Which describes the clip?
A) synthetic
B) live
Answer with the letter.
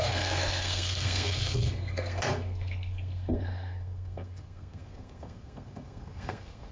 A